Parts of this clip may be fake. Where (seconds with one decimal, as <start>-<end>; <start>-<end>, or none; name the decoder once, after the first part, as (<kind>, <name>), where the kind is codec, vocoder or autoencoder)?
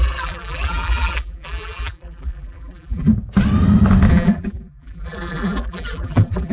0.0-3.1 (vocoder, BigVGAN v2); 4.1-6.5